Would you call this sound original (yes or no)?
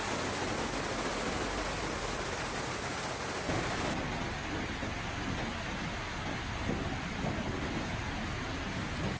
yes